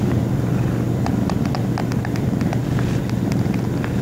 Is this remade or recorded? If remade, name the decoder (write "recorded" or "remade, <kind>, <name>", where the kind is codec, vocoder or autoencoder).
recorded